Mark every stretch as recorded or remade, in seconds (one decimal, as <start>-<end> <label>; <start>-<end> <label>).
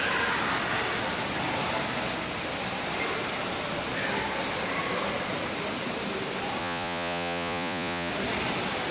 0.0-6.6 recorded; 6.6-8.1 remade; 8.1-8.9 recorded